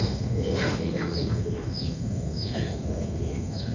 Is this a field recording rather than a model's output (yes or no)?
no